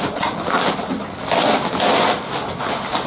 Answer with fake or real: real